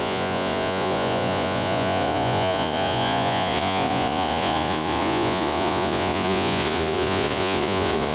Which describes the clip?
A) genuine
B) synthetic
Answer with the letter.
B